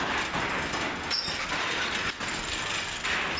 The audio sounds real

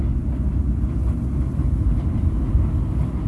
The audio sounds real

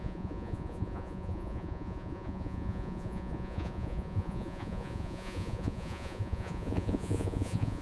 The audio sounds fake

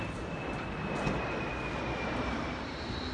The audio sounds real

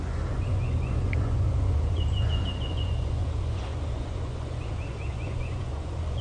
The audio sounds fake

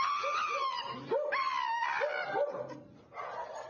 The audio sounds real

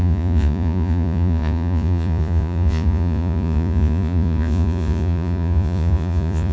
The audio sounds fake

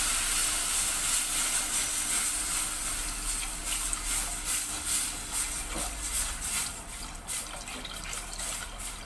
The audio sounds real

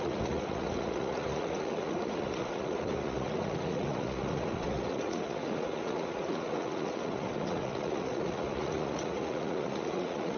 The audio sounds fake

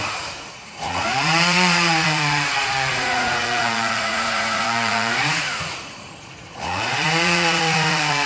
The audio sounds fake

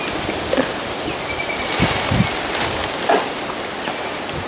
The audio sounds real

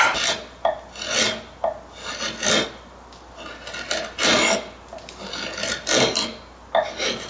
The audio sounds real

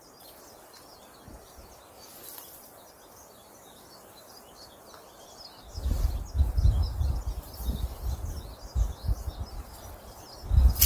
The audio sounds real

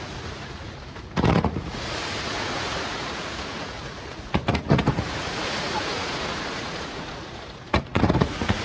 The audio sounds fake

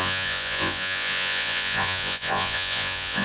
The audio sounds fake